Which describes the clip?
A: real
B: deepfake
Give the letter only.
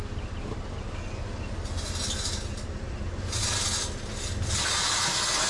A